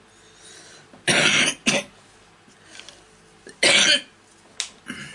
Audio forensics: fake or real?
real